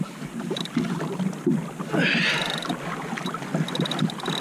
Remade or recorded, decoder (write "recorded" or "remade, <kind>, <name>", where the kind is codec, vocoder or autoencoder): recorded